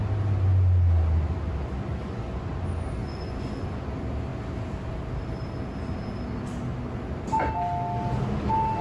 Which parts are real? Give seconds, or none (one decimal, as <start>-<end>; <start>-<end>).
0.0-1.9; 2.5-3.0; 3.8-8.8